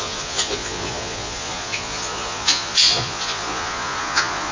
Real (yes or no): no